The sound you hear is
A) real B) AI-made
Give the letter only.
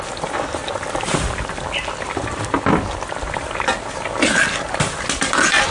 A